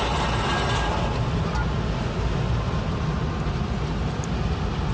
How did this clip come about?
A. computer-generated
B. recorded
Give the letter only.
B